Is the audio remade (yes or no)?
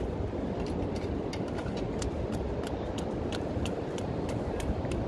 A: no